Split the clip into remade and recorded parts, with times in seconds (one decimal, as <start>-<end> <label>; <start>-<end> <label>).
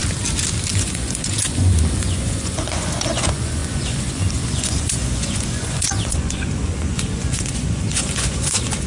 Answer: 0.0-0.7 recorded; 0.7-8.9 remade